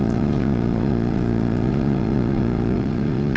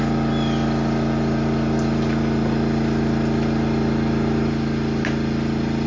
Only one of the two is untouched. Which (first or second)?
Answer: second